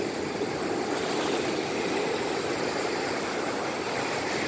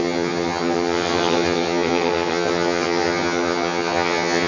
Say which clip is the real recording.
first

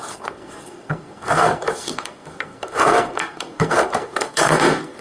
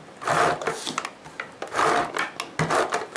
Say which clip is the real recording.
second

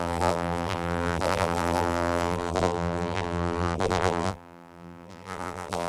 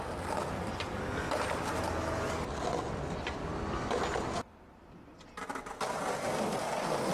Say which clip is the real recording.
second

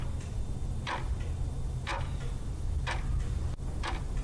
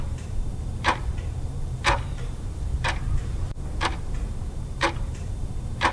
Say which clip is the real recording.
first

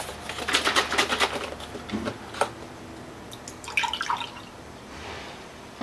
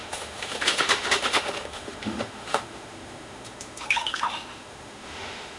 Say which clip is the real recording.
first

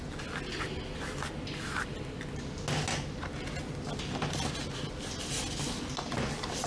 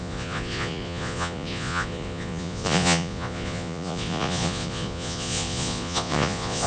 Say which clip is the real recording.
first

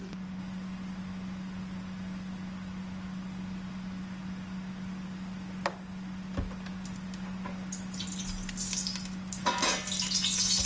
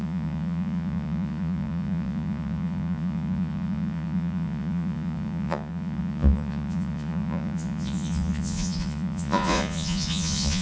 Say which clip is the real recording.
first